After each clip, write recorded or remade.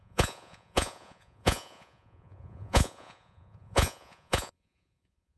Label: remade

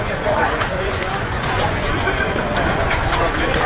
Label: remade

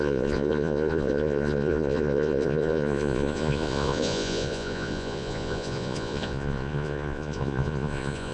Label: remade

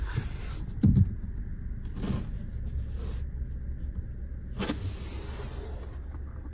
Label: recorded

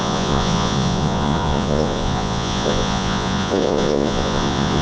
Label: remade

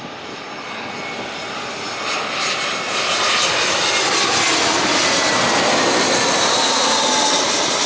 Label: recorded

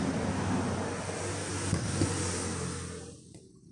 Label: recorded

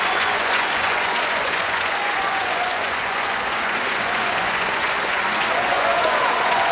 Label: remade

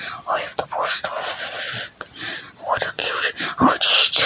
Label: recorded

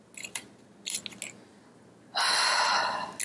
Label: recorded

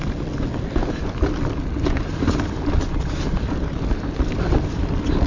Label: recorded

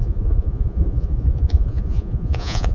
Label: remade